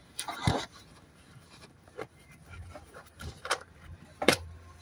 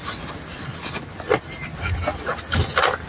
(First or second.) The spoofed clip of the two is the first